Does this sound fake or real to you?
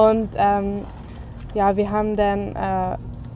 real